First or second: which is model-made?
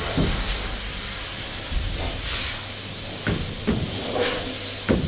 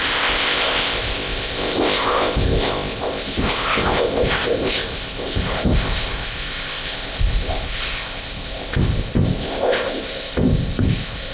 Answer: second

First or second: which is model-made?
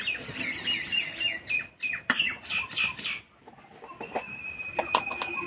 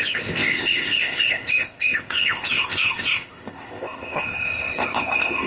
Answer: second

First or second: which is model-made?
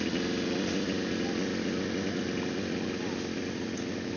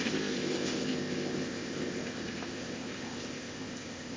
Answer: second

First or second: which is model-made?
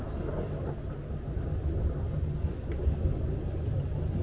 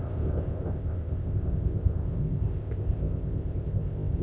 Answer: second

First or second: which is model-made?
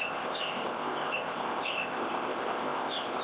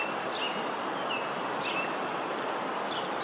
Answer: first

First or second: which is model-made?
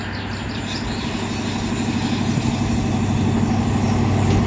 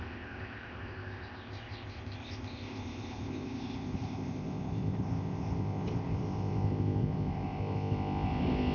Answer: second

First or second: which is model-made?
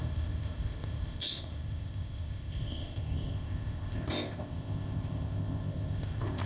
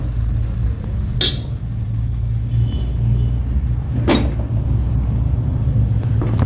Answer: first